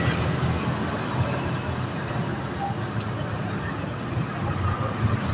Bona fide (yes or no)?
yes